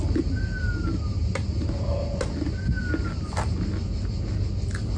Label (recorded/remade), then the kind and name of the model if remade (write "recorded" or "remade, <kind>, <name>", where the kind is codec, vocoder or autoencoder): recorded